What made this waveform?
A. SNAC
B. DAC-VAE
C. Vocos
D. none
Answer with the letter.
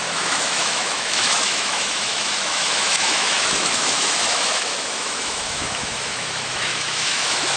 B